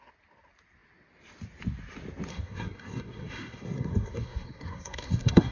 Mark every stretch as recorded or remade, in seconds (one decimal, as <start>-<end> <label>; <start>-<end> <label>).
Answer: 0.0-2.3 recorded; 2.3-5.5 remade